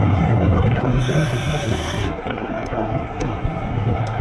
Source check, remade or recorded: remade